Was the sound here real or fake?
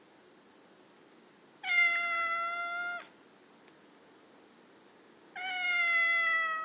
real